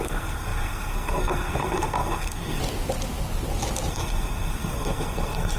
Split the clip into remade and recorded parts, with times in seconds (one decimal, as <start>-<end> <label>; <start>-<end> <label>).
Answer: 0.0-2.6 remade; 2.6-3.9 recorded; 3.9-5.6 remade